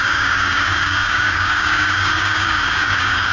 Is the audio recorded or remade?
remade